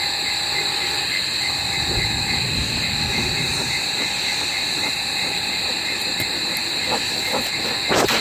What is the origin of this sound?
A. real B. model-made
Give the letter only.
A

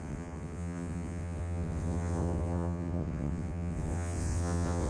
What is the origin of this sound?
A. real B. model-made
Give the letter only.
B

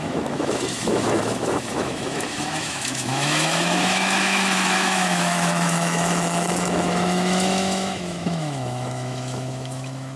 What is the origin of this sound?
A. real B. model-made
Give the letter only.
B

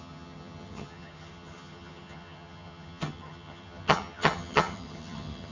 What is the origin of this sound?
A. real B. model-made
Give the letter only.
B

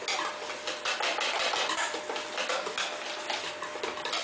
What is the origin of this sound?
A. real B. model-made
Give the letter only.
A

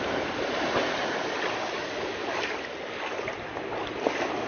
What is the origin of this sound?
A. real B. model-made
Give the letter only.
A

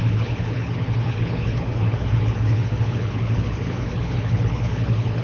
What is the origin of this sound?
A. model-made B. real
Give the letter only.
A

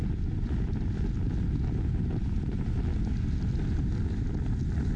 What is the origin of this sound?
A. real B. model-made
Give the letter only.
A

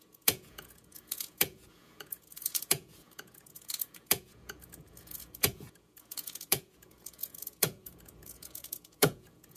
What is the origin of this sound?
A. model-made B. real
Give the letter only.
A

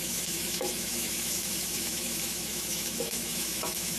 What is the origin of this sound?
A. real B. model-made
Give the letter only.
B